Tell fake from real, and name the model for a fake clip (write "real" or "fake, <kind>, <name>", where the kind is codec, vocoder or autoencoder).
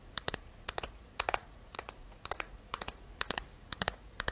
fake, vocoder, Vocos